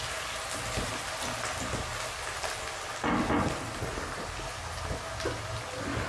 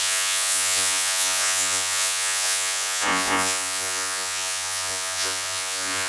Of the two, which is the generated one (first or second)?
second